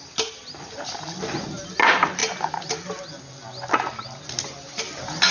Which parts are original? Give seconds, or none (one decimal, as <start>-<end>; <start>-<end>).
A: 0.0-5.3